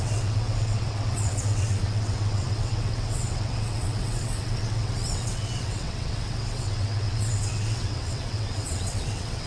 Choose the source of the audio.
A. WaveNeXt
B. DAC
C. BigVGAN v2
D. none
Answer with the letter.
A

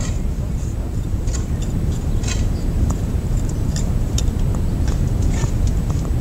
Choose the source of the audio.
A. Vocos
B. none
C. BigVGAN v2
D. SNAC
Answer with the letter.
C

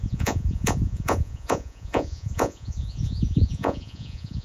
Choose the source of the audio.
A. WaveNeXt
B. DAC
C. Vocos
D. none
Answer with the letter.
C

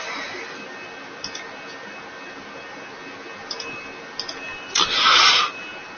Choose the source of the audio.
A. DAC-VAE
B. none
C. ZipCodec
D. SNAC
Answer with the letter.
B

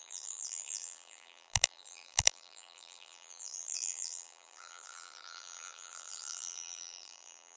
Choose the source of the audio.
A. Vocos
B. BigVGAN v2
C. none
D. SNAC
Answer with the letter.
B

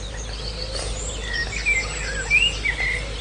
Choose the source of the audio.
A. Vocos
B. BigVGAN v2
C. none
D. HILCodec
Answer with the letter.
C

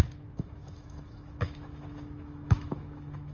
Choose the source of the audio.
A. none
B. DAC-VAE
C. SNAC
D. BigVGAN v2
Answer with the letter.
B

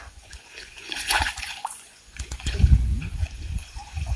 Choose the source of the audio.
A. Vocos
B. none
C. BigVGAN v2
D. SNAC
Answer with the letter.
A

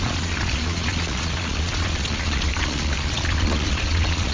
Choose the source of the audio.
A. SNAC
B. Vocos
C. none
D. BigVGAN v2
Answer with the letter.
B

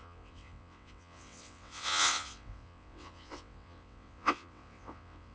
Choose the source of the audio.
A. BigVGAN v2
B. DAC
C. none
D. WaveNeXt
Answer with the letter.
D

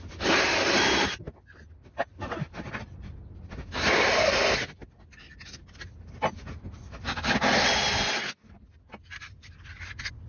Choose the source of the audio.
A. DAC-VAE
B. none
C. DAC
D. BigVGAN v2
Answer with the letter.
B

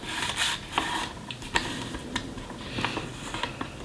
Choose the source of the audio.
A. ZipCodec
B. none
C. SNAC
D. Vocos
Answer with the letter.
B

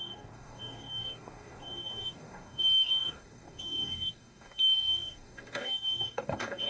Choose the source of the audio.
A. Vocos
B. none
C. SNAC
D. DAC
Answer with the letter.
D